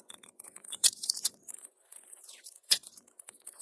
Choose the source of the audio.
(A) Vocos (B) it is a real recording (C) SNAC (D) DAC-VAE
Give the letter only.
A